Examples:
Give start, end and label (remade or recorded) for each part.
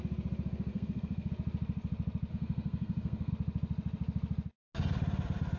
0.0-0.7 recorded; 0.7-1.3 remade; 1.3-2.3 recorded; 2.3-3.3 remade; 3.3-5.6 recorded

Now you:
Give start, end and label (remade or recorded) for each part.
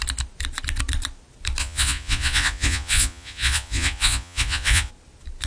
0.0-1.6 recorded; 1.6-4.9 remade; 4.9-5.5 recorded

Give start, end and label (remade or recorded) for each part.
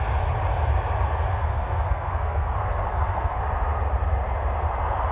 0.0-1.3 recorded; 1.3-3.4 remade; 3.4-5.1 recorded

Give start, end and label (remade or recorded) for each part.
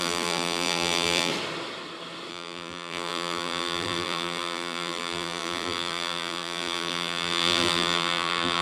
0.0-1.3 remade; 1.3-2.3 recorded; 2.3-8.6 remade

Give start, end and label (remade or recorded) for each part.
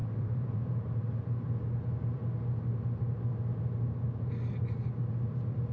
0.0-1.2 remade; 1.2-5.7 recorded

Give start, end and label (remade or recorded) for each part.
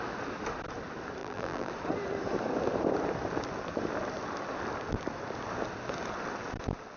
0.0-1.2 recorded; 1.2-1.7 remade; 1.7-7.0 recorded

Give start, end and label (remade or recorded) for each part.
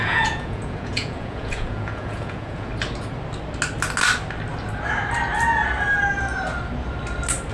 0.0-2.7 remade; 2.7-7.5 recorded